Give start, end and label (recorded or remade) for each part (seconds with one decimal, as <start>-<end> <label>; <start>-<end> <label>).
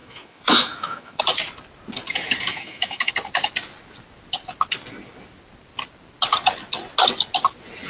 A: 0.0-1.2 remade; 1.2-2.5 recorded; 2.5-3.1 remade; 3.1-7.9 recorded